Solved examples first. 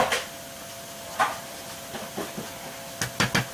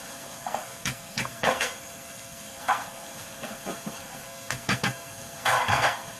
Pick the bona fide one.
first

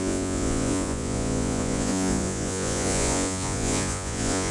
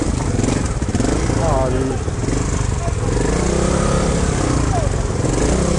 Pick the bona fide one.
second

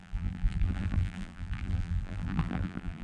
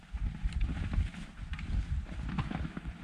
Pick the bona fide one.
second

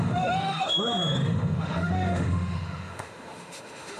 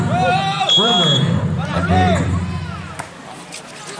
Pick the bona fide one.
second